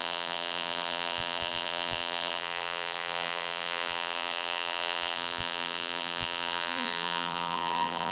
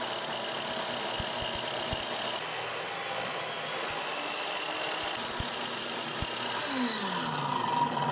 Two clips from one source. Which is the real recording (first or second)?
second